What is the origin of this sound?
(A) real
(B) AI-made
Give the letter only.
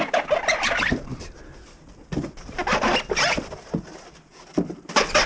A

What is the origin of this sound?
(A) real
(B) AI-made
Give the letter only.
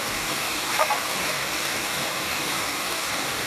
B